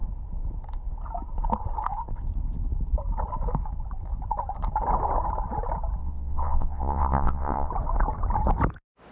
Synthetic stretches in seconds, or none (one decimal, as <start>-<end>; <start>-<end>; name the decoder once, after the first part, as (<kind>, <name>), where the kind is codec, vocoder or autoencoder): 6.0-7.7 (vocoder, WaveNeXt)